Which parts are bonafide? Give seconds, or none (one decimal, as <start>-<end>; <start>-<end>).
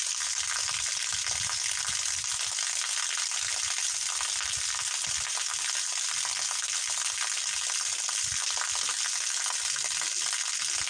0.0-10.9